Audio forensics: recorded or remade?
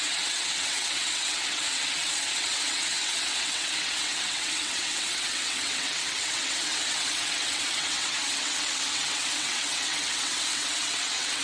remade